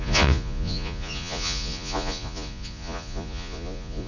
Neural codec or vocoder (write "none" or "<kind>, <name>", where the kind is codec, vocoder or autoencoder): vocoder, Vocos